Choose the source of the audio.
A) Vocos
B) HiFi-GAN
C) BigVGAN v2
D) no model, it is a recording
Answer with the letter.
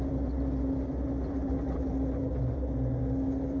D